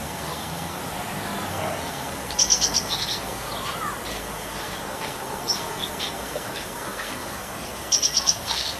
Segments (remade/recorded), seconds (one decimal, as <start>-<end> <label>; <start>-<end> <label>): 0.0-0.8 remade; 0.8-1.5 recorded; 1.5-3.5 remade; 3.5-4.1 recorded; 4.1-8.8 remade